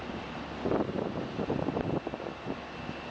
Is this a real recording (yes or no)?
yes